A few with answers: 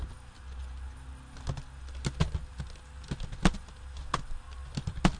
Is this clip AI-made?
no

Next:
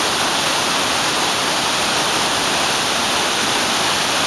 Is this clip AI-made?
no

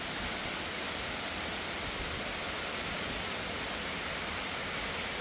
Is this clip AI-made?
no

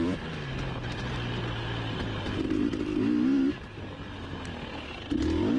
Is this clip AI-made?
no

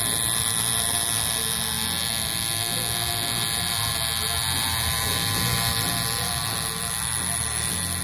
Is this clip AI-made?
no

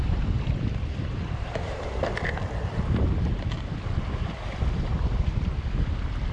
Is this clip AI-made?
yes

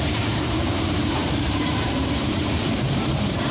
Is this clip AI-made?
yes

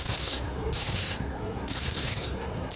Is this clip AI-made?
yes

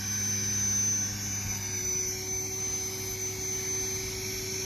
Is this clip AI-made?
no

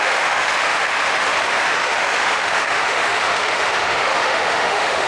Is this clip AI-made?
yes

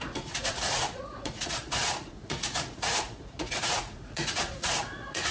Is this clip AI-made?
yes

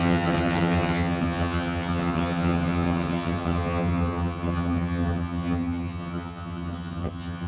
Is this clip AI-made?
yes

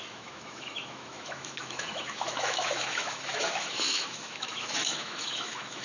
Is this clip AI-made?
yes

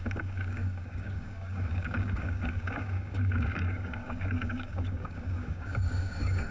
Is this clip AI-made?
yes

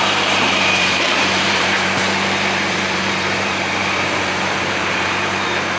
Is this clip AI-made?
yes